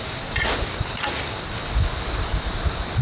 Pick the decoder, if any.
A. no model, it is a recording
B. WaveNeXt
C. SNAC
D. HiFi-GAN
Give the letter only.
A